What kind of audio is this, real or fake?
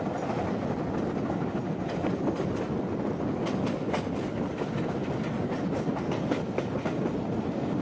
real